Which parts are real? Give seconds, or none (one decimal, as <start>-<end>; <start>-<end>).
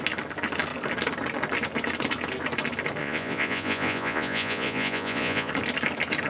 0.0-3.0; 5.5-6.3